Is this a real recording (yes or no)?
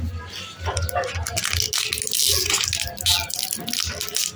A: yes